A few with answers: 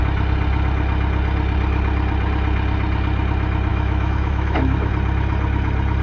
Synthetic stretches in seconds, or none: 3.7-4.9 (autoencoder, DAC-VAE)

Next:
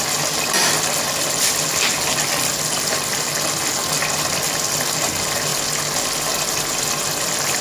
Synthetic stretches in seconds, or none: none